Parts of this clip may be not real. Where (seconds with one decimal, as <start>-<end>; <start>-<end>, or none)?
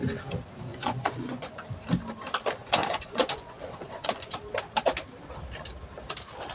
0.7-1.5; 2.6-4.4